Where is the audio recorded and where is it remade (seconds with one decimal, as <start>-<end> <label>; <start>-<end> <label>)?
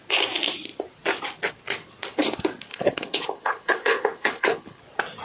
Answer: 0.0-2.7 recorded; 2.7-4.8 remade; 4.8-5.2 recorded